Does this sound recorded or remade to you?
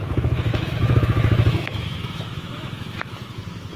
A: remade